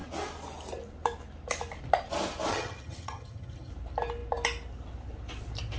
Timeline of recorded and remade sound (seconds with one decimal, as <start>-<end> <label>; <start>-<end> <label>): 0.0-2.5 recorded; 2.5-3.7 remade; 3.7-5.8 recorded